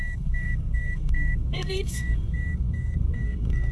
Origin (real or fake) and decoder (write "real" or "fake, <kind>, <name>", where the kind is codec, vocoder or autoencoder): fake, codec, SNAC